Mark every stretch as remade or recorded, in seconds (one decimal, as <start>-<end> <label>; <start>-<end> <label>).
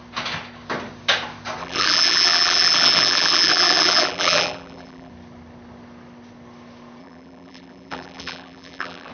0.0-1.6 recorded; 1.6-5.1 remade; 5.1-7.0 recorded; 7.0-9.1 remade